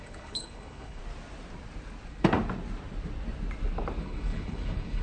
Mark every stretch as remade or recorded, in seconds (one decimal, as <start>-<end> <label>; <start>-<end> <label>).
0.0-1.0 remade; 1.0-4.0 recorded; 4.0-5.0 remade